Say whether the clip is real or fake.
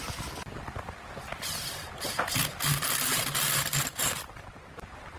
real